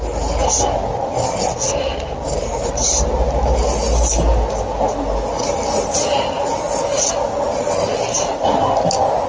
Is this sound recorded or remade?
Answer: recorded